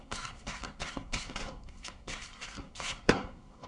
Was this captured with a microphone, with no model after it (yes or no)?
no